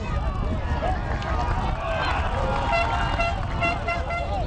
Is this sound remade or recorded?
recorded